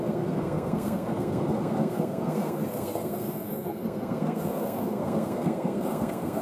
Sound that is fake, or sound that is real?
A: fake